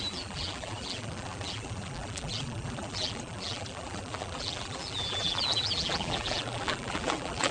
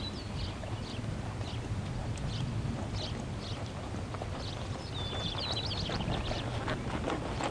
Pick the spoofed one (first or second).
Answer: first